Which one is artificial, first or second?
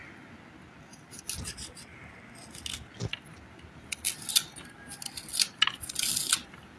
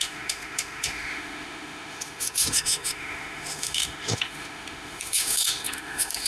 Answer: second